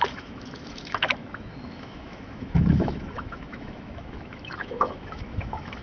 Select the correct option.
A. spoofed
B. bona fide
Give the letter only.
A